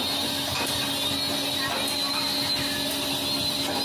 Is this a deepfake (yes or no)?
no